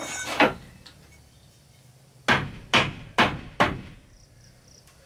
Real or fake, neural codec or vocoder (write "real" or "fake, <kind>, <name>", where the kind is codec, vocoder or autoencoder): real